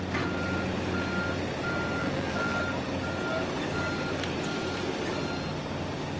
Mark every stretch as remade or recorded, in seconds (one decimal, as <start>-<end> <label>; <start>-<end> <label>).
0.0-2.0 recorded; 2.0-2.6 remade; 2.6-6.2 recorded